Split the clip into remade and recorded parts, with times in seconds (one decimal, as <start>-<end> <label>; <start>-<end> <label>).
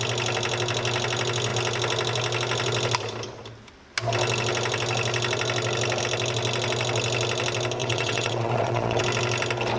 0.0-7.8 recorded; 7.8-9.0 remade; 9.0-9.8 recorded